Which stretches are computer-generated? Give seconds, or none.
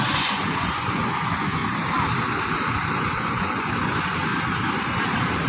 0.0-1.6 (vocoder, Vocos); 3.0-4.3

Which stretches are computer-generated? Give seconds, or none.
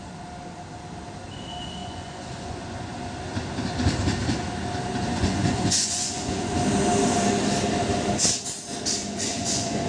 1.8-3.0 (vocoder, Vocos); 5.1-6.5; 9.0-9.9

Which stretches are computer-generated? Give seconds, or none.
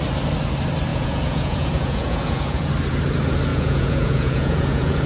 0.9-2.7 (vocoder, Vocos); 3.5-5.1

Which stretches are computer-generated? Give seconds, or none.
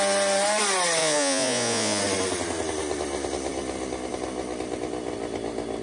1.0-2.0 (vocoder, Vocos)